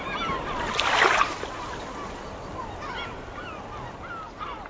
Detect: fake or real real